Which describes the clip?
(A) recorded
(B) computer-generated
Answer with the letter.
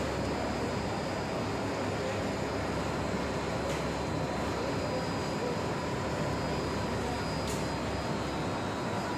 A